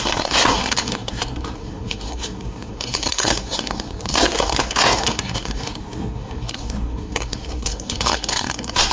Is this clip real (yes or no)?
no